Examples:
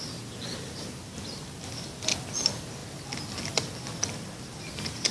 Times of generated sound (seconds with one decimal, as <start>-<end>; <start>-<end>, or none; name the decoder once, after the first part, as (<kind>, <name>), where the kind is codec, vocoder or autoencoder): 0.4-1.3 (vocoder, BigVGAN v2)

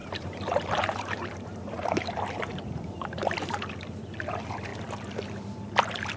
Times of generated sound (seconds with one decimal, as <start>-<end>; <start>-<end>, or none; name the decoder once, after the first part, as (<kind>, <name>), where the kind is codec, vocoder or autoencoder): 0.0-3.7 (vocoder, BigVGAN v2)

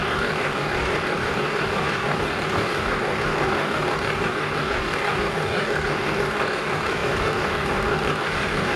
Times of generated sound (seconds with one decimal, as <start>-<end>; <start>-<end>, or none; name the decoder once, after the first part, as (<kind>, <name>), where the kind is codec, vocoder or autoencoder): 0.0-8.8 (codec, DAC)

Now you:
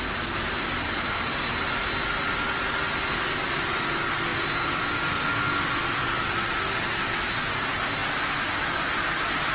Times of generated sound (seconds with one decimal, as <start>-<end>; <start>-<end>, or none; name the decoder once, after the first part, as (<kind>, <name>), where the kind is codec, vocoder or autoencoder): none

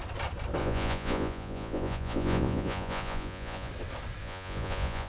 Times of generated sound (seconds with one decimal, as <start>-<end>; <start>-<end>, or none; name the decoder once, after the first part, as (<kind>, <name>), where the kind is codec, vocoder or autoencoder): 0.6-3.7 (vocoder, Vocos); 4.2-5.1